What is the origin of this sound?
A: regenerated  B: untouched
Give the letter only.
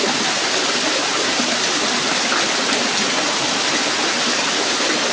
B